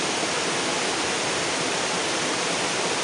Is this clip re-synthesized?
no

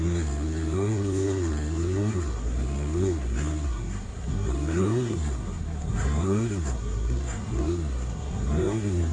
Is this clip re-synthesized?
yes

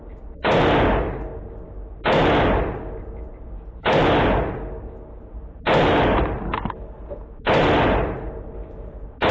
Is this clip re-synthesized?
no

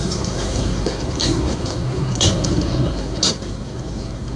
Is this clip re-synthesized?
yes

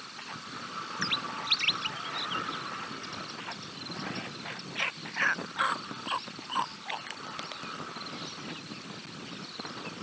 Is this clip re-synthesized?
no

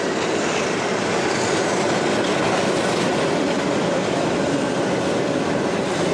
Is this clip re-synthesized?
no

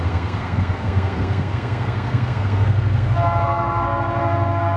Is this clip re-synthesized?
yes